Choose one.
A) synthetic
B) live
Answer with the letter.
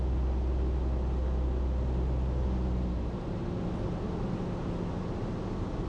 B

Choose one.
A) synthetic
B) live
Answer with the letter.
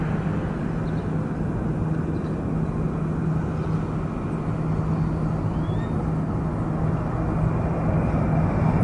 B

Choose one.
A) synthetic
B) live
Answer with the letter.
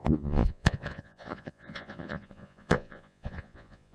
A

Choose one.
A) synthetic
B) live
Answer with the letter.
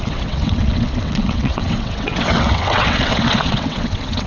A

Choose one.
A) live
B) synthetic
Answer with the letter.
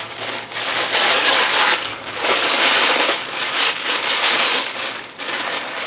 B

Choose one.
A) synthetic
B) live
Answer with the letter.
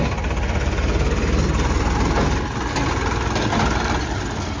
B